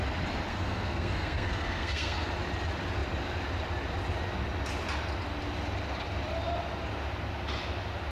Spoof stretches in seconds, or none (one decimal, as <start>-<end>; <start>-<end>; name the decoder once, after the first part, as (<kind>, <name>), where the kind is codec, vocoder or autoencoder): 0.5-2.3 (codec, SNAC)